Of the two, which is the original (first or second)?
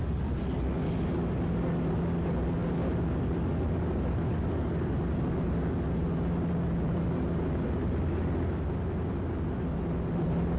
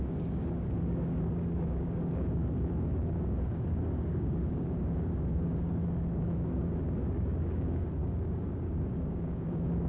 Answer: first